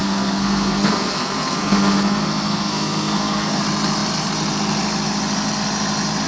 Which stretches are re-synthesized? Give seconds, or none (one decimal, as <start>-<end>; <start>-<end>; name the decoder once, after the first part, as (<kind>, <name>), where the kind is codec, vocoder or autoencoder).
0.0-3.6 (codec, SNAC)